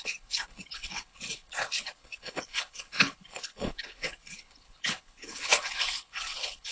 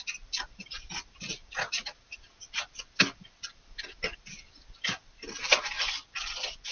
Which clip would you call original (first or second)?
second